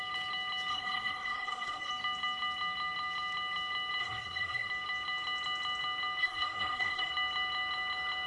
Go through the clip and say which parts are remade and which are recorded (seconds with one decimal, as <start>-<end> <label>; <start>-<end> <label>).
0.0-0.7 recorded; 0.7-1.9 remade; 1.9-4.0 recorded; 4.0-4.7 remade; 4.7-6.2 recorded; 6.2-7.1 remade; 7.1-8.3 recorded